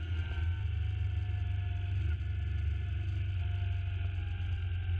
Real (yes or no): yes